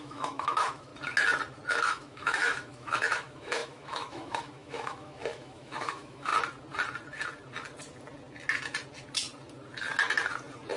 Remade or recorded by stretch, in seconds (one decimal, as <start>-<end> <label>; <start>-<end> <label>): 0.0-0.9 remade; 0.9-1.7 recorded; 1.7-6.3 remade; 6.3-10.8 recorded